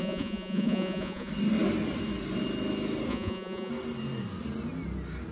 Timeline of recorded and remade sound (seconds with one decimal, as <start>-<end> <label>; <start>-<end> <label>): 0.0-1.3 remade; 1.3-3.1 recorded; 3.1-3.7 remade; 3.7-5.3 recorded